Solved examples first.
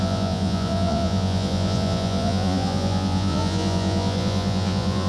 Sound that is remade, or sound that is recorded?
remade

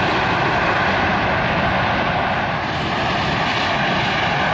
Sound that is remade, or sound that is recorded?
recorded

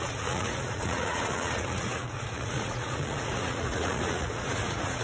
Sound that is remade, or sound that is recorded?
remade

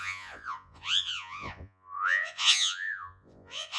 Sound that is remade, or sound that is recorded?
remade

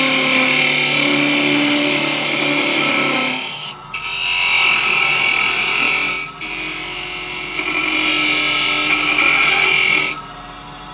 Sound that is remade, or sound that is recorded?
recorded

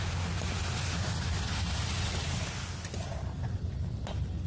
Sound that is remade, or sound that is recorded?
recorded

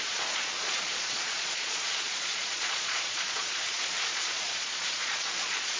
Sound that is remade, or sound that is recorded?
remade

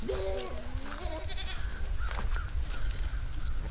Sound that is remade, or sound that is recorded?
recorded